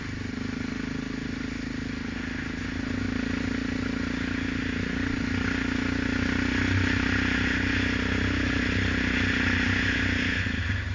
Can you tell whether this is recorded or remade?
recorded